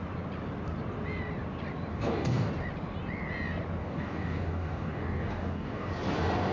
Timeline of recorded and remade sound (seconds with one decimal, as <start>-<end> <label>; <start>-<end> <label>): 0.0-1.9 recorded; 1.9-2.5 remade; 2.5-3.8 recorded; 3.8-5.9 remade; 5.9-6.5 recorded